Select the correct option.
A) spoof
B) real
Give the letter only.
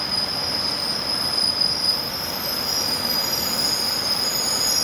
B